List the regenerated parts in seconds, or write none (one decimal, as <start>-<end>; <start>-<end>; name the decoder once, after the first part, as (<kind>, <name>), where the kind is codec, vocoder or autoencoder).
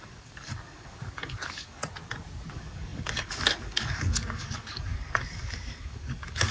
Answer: 0.0-1.8 (codec, DAC); 2.5-6.5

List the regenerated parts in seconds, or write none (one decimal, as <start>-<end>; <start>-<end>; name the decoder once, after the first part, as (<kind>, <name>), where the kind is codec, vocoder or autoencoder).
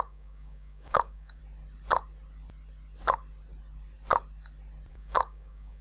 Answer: 0.0-1.4 (codec, DAC); 4.9-5.8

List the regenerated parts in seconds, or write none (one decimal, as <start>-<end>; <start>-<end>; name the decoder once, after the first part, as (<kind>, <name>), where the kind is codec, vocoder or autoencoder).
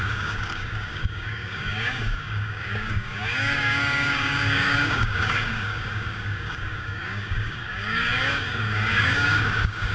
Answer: 0.0-9.9 (codec, DAC)